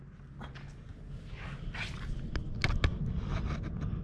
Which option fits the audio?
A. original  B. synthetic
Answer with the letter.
A